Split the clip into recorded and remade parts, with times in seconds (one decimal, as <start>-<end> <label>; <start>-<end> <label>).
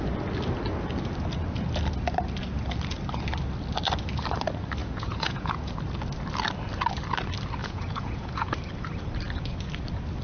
0.0-4.8 recorded; 4.8-5.7 remade; 5.7-7.6 recorded; 7.6-8.5 remade; 8.5-10.2 recorded